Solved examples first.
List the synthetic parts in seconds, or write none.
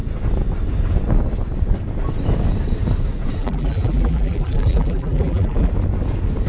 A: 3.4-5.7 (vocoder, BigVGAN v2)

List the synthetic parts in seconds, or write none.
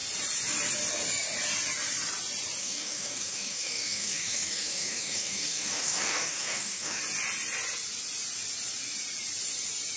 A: 2.6-7.0 (codec, DAC)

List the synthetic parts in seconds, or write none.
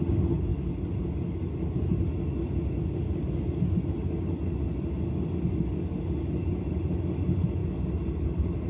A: none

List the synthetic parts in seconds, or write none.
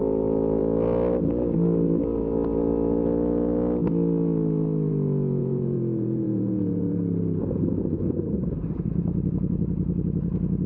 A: 5.4-10.7 (vocoder, BigVGAN v2)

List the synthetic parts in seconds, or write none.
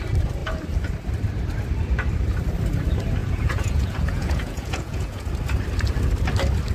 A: 3.2-5.3 (vocoder, Vocos)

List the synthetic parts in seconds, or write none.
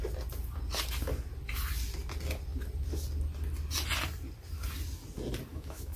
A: 5.5-6.0 (autoencoder, DAC-VAE)